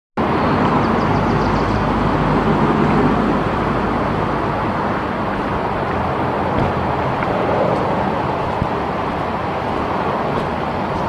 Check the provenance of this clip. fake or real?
real